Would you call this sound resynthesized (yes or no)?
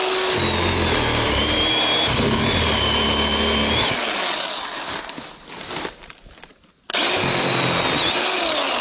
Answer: no